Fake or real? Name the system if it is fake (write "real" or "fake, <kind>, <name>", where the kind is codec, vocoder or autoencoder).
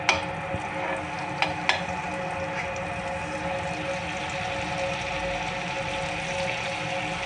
real